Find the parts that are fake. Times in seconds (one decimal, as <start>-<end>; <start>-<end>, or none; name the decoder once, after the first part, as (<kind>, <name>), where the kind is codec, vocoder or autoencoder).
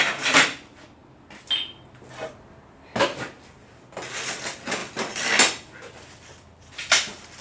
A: none